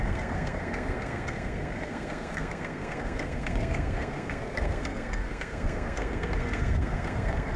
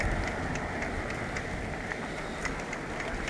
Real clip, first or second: second